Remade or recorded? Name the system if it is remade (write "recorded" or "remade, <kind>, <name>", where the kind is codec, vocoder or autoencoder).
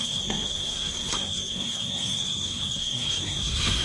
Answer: remade, codec, SNAC